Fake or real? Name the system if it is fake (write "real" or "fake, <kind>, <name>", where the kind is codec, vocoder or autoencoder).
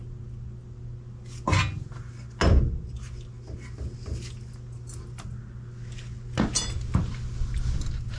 real